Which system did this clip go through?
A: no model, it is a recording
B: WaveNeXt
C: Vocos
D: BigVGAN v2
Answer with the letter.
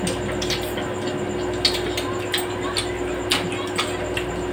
A